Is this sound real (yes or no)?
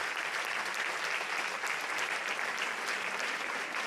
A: yes